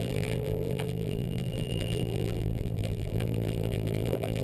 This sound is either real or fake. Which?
fake